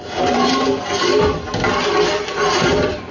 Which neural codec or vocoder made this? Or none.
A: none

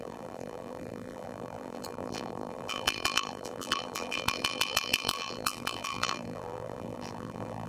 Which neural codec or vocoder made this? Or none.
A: vocoder, BigVGAN v2